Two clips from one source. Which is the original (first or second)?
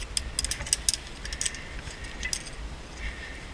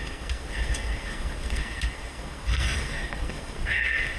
first